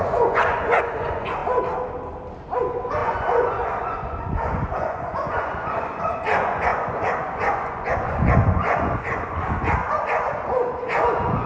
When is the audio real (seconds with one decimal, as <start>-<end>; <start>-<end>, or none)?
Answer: 1.4-2.6